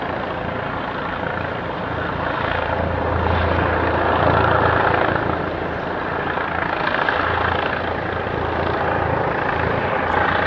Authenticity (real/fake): real